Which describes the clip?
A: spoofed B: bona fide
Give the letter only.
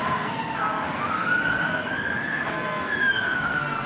A